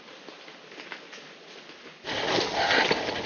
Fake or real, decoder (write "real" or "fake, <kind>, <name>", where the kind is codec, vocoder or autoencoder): real